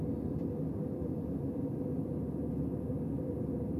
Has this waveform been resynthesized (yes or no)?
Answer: no